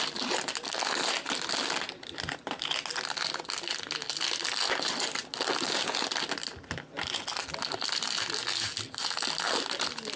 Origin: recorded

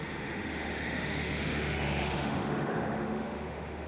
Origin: remade